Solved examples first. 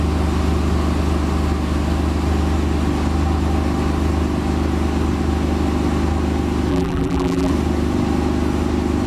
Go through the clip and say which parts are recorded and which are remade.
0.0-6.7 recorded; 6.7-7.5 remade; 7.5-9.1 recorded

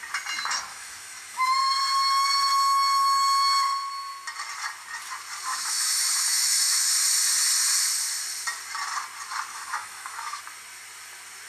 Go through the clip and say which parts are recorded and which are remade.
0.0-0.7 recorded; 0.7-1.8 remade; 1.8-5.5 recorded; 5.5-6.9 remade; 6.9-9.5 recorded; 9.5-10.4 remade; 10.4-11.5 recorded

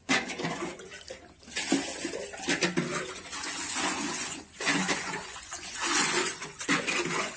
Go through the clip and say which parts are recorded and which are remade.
0.0-0.9 remade; 0.9-3.1 recorded; 3.1-7.4 remade